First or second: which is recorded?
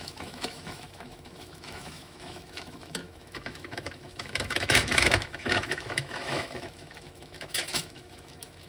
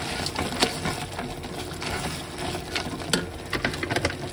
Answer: second